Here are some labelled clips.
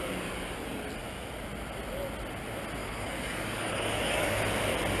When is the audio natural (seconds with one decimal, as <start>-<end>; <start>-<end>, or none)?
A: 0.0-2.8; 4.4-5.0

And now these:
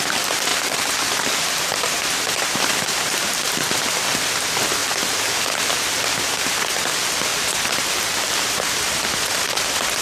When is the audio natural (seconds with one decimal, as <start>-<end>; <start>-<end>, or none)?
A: 0.5-1.2

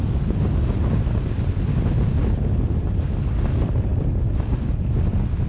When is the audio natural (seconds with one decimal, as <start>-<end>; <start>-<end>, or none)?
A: 0.0-5.5